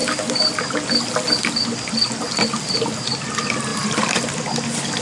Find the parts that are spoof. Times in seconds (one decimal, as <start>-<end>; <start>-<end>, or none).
3.7-5.0